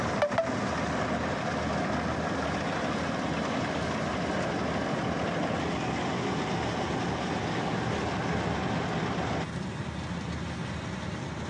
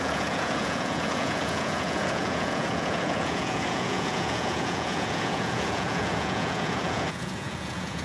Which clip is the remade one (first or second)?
second